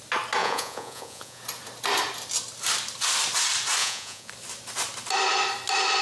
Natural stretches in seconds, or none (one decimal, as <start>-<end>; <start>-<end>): 0.0-0.4; 1.4-3.8; 4.3-6.0